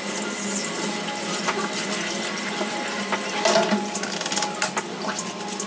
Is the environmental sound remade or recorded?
recorded